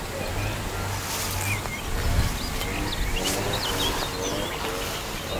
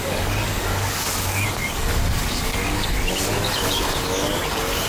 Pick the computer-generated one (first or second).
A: second